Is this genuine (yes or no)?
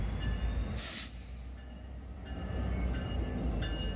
yes